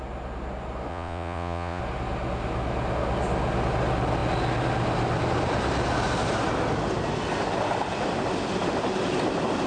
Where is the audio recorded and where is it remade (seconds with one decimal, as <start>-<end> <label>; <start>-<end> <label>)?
0.0-0.9 recorded; 0.9-1.8 remade; 1.8-9.7 recorded